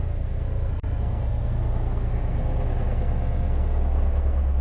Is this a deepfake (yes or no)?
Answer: yes